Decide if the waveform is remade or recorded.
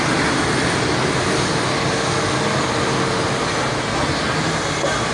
recorded